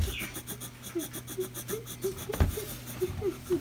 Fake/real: real